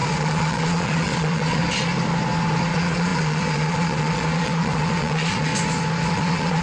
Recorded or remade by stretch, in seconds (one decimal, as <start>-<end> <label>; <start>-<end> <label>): 0.0-1.6 remade; 1.6-2.7 recorded; 2.7-5.5 remade; 5.5-6.1 recorded; 6.1-6.6 remade